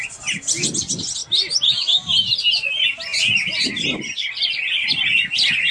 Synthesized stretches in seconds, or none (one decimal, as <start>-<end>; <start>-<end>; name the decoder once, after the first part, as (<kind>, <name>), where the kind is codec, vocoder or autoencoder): none